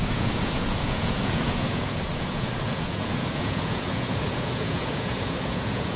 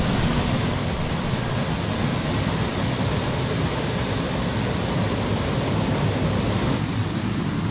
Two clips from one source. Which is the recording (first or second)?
second